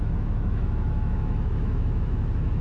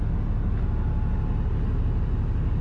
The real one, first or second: second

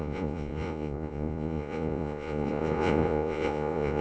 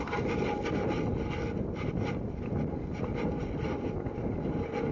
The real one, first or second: second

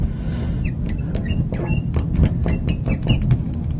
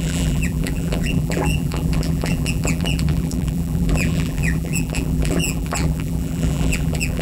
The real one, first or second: first